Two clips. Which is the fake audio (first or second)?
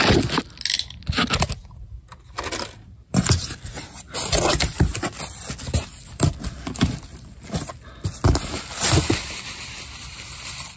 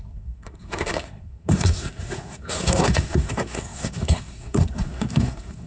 second